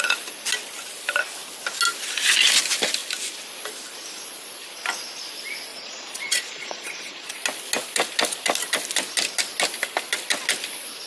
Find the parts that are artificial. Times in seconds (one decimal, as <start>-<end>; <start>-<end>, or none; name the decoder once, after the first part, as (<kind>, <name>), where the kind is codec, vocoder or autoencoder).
5.7-7.3 (vocoder, Vocos)